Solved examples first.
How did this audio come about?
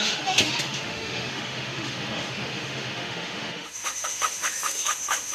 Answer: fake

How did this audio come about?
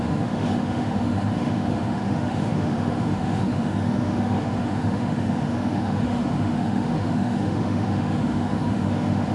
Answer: fake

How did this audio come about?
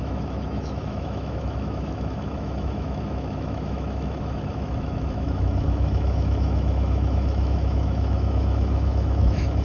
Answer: fake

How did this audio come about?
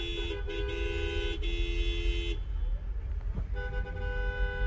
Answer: real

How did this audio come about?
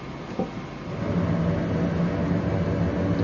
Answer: real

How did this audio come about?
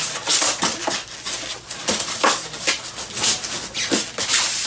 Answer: real